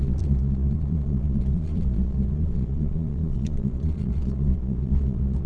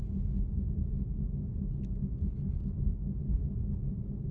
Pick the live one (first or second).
second